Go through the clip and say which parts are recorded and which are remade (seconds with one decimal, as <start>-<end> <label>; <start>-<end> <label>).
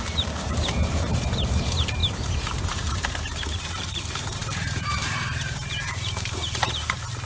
0.0-7.3 remade